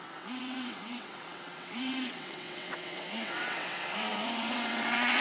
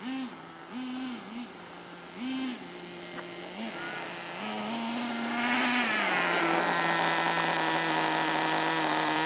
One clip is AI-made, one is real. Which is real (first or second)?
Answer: second